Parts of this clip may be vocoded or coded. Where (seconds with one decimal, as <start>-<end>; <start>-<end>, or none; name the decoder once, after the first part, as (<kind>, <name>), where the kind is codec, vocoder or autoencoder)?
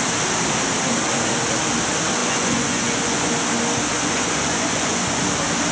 2.2-3.3 (vocoder, Vocos); 3.9-5.2